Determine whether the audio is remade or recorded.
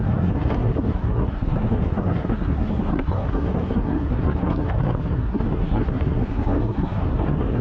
remade